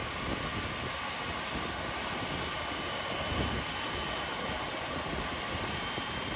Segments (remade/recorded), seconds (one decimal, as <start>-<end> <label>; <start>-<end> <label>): 0.0-6.4 recorded